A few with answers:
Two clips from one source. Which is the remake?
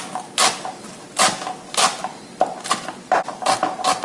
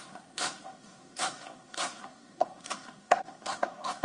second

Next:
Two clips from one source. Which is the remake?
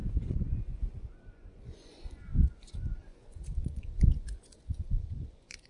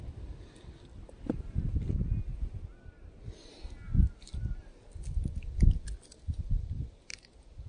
first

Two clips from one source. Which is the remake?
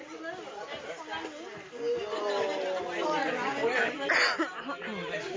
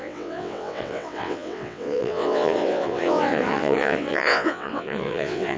second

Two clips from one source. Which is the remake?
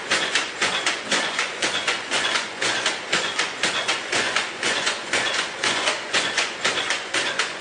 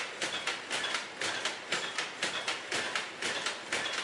first